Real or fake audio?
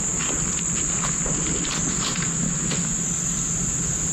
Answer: real